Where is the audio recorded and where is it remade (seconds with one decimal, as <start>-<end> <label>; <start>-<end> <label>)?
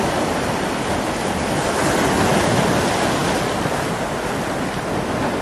0.0-5.4 recorded